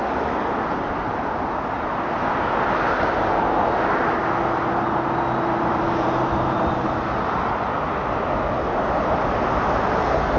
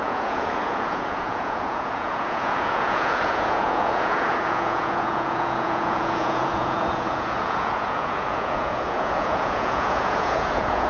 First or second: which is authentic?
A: first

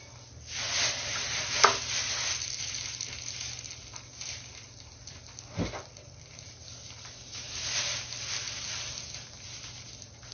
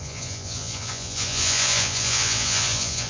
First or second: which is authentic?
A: first